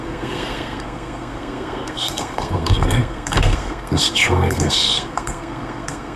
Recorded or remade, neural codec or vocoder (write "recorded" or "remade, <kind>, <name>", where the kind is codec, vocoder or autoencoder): remade, codec, SNAC